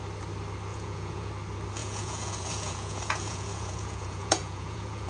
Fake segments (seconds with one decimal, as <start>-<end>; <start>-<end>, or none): 0.7-1.3; 1.8-5.1